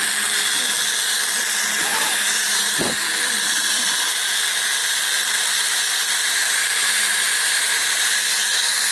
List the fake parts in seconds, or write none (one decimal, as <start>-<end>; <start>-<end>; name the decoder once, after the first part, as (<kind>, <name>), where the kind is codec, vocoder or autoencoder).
1.9-2.9 (vocoder, BigVGAN v2); 6.1-8.2